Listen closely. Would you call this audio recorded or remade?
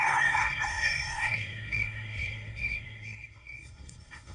remade